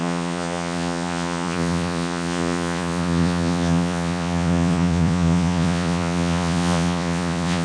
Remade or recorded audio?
remade